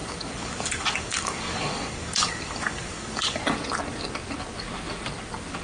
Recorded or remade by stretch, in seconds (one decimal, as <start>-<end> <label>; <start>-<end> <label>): 0.0-3.4 remade; 3.4-5.6 recorded